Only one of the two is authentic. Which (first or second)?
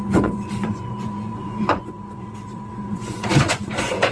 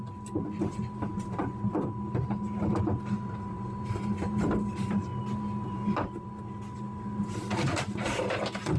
second